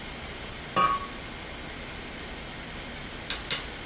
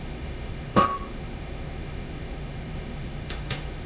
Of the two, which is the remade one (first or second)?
second